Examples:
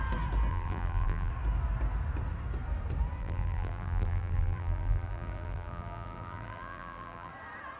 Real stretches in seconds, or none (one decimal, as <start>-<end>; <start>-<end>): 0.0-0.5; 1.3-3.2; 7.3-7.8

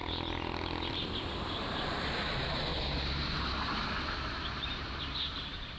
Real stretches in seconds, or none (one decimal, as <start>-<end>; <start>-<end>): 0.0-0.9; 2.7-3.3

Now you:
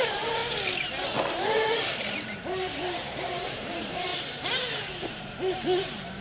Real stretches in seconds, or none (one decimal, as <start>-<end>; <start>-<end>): 0.4-1.3; 4.1-5.1

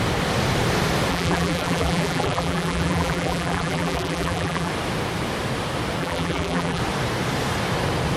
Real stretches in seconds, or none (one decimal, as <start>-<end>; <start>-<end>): 0.0-1.1; 4.7-6.0; 6.8-8.2

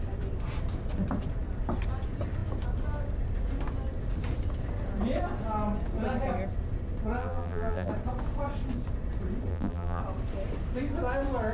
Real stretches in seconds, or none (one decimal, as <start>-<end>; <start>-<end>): 0.0-7.2; 7.9-9.5; 10.0-11.5

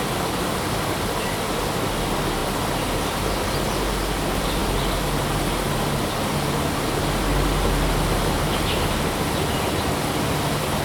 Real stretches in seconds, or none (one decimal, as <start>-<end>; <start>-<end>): 0.0-10.8